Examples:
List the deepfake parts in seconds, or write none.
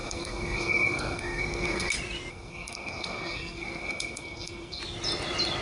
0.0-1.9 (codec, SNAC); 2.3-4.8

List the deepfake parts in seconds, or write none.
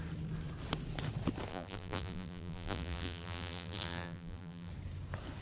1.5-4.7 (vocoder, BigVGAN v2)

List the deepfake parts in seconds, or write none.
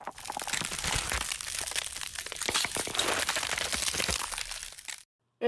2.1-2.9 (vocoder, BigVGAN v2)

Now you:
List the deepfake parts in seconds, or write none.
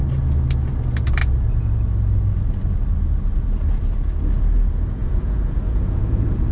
5.0-6.5 (vocoder, Vocos)